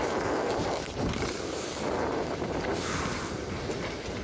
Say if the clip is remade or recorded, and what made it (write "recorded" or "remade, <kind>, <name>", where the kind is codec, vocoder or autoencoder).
recorded